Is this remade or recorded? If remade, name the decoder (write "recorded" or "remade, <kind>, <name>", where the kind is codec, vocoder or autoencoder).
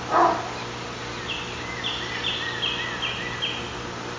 recorded